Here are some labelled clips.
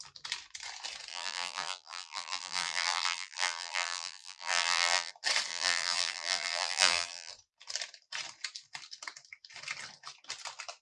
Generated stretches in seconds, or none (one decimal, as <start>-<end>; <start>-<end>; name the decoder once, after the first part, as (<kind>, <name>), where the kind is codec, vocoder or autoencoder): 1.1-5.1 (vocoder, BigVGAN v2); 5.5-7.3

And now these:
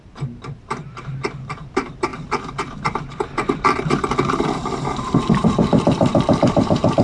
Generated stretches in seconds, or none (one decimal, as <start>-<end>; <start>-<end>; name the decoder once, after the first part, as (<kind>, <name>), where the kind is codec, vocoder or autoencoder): 0.0-2.1 (vocoder, BigVGAN v2); 4.3-7.0

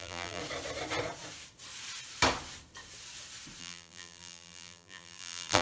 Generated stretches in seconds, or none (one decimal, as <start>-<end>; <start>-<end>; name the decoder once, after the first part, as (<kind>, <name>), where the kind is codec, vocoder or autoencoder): 0.0-0.4 (vocoder, BigVGAN v2); 3.6-5.6

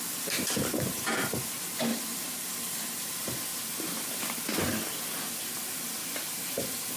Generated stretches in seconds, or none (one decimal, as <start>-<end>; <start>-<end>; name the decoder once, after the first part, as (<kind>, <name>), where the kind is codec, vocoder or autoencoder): 1.9-3.1 (vocoder, BigVGAN v2); 6.0-7.0

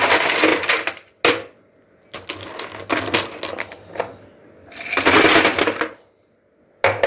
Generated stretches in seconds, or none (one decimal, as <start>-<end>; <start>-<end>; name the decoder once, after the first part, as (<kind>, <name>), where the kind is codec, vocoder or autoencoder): 5.5-6.2 (vocoder, BigVGAN v2)

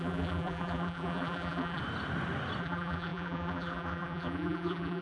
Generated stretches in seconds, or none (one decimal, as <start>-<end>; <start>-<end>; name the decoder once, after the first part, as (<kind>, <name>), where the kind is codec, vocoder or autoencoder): 0.0-1.8 (vocoder, BigVGAN v2); 2.6-5.0